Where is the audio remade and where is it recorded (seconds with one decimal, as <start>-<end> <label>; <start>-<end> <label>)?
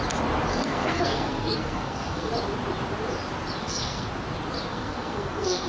0.0-0.5 recorded; 0.5-2.3 remade; 2.3-3.6 recorded; 3.6-4.1 remade; 4.1-4.7 recorded; 4.7-5.7 remade